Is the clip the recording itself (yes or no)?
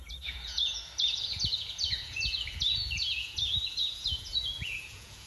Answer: no